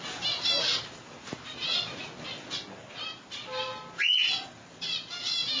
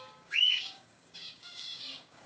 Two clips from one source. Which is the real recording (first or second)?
first